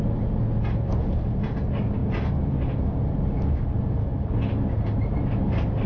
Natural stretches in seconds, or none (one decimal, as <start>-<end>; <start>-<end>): 0.0-5.9